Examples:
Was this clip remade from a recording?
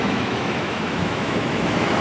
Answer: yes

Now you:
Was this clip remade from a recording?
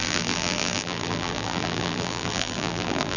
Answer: yes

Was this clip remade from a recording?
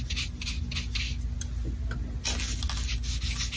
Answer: no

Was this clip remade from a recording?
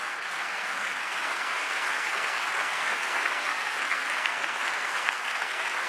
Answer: yes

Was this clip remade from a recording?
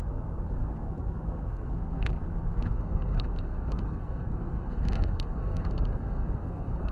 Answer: yes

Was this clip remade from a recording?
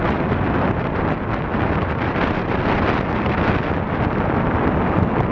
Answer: no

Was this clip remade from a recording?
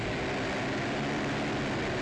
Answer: no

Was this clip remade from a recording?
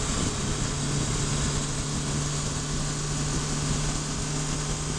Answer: no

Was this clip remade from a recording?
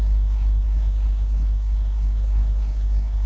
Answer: yes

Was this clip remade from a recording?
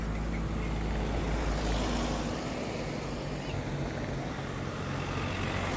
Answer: no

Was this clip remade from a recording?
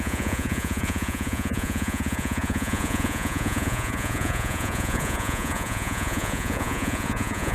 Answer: yes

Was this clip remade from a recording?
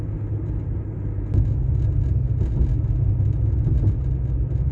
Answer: no